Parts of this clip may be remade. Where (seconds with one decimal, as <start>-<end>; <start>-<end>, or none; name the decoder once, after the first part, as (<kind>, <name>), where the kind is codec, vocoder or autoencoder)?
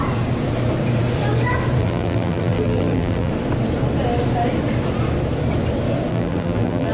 1.8-3.3 (vocoder, BigVGAN v2); 6.1-6.9